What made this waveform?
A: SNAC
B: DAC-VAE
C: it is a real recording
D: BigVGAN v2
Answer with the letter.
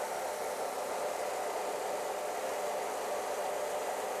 C